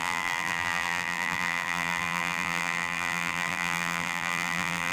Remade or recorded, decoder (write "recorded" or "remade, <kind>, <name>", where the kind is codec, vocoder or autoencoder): remade, vocoder, BigVGAN v2